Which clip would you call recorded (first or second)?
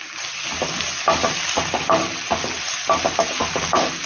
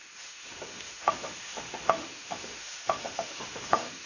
first